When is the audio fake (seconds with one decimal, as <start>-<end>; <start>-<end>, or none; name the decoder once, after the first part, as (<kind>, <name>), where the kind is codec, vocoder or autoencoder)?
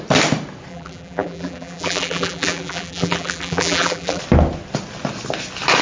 0.7-4.2 (vocoder, BigVGAN v2)